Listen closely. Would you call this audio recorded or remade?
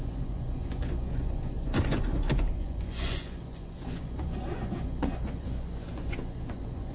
remade